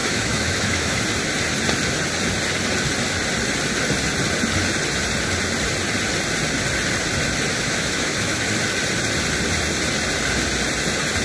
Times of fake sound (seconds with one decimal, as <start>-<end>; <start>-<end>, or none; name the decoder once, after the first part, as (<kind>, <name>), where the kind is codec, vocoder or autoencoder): 0.0-1.0 (autoencoder, DAC-VAE); 7.5-8.4